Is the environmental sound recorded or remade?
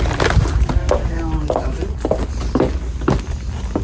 recorded